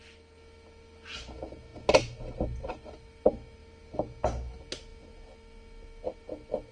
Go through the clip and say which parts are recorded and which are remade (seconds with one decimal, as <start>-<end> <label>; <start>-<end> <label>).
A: 0.0-6.7 recorded